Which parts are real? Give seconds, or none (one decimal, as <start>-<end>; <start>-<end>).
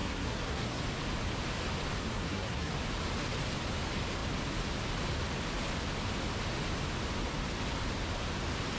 0.8-2.0; 2.7-8.8